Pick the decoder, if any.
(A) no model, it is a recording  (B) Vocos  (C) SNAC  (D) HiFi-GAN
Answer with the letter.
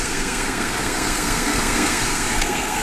C